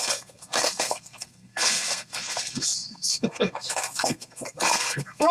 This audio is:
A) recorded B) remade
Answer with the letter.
B